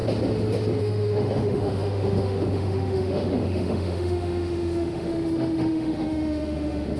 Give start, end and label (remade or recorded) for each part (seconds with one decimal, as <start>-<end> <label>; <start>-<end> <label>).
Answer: 0.0-0.8 recorded; 0.8-7.0 remade

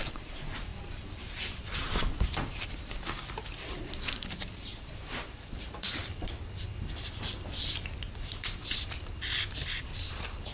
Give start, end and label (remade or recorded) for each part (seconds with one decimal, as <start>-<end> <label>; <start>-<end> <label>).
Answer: 0.0-3.5 remade; 3.5-4.1 recorded; 4.1-6.0 remade; 6.0-9.8 recorded; 9.8-10.5 remade

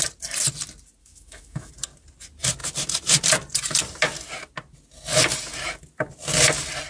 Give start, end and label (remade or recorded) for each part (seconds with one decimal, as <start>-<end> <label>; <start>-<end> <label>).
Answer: 0.0-1.0 recorded; 1.0-1.7 remade; 1.7-6.9 recorded

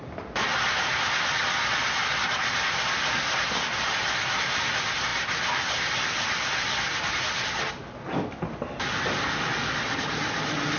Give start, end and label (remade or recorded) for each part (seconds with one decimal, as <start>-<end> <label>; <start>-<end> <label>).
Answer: 0.0-10.8 recorded

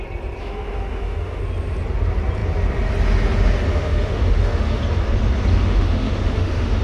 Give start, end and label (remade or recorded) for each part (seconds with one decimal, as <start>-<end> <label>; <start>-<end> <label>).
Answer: 0.0-0.4 recorded; 0.4-1.4 remade; 1.4-3.7 recorded; 3.7-4.8 remade; 4.8-5.5 recorded; 5.5-6.8 remade